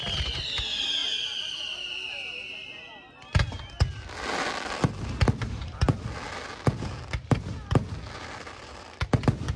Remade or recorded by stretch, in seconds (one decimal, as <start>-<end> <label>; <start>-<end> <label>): 0.0-9.6 recorded

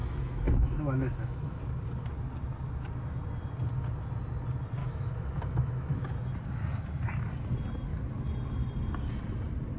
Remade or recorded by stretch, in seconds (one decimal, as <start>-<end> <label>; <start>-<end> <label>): 0.0-1.6 remade; 1.6-4.8 recorded; 4.8-6.1 remade; 6.1-9.8 recorded

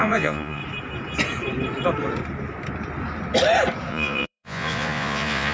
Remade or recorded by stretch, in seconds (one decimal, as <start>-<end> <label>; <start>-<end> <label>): 0.0-0.6 remade; 0.6-3.9 recorded; 3.9-5.5 remade

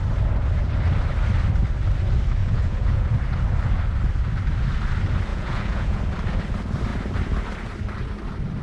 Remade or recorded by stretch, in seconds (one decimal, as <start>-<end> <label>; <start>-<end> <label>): 0.0-2.4 recorded; 2.4-3.1 remade; 3.1-5.3 recorded; 5.3-6.0 remade; 6.0-8.6 recorded